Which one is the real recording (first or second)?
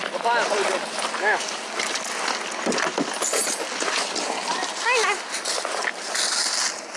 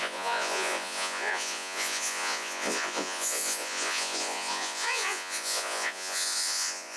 first